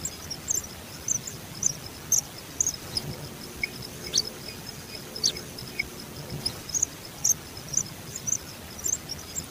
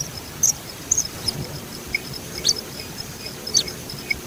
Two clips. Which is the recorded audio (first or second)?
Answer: first